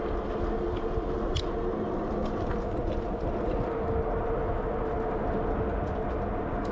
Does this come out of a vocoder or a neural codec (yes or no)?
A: no